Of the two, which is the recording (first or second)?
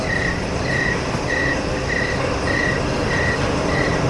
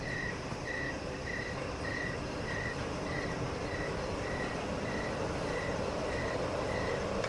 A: first